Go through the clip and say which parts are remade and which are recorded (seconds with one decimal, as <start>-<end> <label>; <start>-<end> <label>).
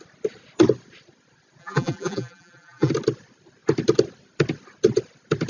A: 0.0-1.6 recorded; 1.6-2.9 remade; 2.9-5.5 recorded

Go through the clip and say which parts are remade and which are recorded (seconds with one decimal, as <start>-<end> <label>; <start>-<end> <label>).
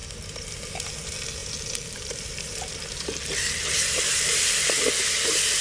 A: 0.0-1.4 recorded; 1.4-4.7 remade; 4.7-5.6 recorded